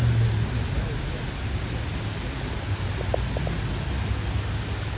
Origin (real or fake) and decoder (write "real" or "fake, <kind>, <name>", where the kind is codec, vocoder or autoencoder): real